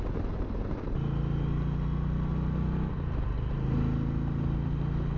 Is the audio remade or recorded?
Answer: recorded